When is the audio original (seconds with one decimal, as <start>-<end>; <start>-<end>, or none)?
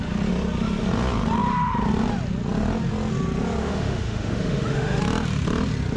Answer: 0.0-3.6; 5.0-6.0